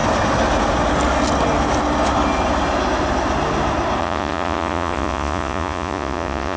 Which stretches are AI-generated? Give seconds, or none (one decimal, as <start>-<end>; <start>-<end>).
4.0-6.6